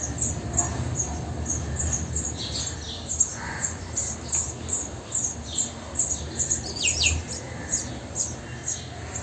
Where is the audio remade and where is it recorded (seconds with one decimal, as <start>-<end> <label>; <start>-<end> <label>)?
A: 0.0-3.3 recorded; 3.3-3.9 remade; 3.9-9.2 recorded